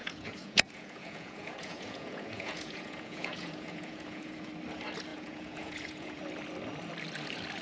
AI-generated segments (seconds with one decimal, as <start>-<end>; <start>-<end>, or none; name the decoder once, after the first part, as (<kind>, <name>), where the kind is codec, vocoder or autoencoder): 0.0-4.5 (vocoder, Vocos); 5.1-6.2